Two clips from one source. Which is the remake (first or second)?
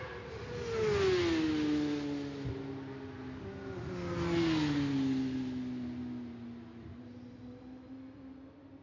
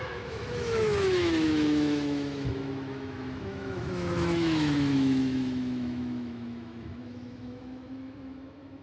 second